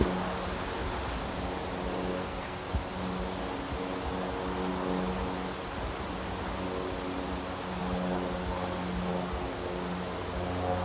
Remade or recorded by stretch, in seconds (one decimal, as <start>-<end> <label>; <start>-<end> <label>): 0.0-2.1 recorded; 2.1-2.7 remade; 2.7-10.8 recorded